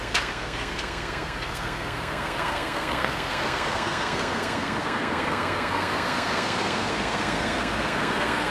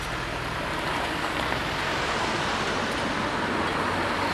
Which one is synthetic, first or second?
first